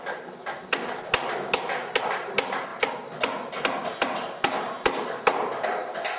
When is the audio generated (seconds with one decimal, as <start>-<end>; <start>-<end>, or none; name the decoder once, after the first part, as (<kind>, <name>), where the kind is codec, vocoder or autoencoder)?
none